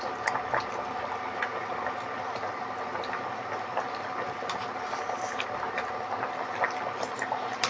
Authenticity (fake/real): real